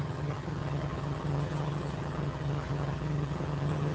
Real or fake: fake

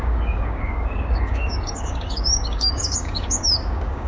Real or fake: fake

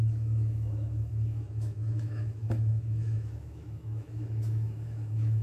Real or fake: fake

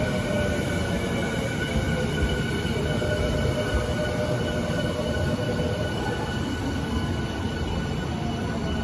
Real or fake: real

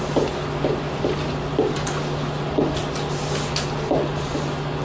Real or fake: real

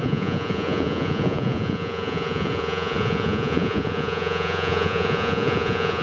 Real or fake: fake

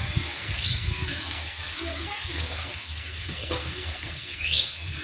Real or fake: fake